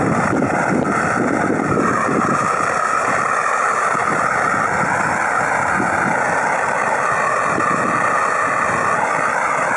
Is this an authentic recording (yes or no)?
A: yes